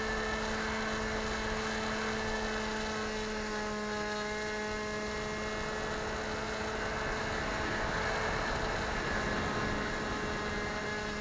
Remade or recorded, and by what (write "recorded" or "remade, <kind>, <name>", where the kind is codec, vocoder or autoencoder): recorded